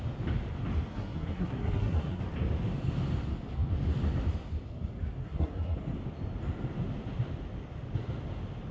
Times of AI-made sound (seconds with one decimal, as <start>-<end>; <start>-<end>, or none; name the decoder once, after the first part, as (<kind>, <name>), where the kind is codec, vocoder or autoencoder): 0.9-2.2 (codec, SNAC); 5.2-5.8